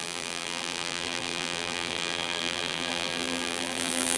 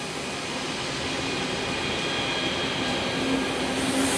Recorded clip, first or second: second